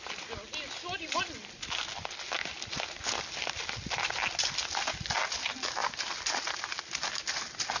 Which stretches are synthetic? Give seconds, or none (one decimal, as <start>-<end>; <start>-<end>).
none